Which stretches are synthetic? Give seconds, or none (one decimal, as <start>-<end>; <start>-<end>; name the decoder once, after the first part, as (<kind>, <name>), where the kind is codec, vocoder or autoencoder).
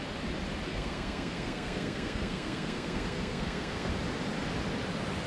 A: 0.7-3.9 (codec, SNAC)